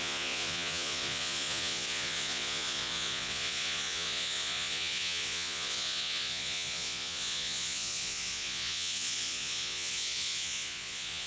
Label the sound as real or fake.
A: fake